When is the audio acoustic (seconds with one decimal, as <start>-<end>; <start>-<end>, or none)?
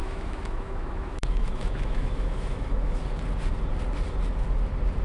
3.0-5.0